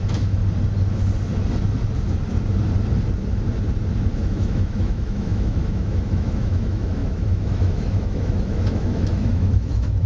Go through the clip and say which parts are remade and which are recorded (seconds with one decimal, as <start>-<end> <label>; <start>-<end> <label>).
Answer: 0.0-0.4 remade; 0.4-4.1 recorded; 4.1-10.1 remade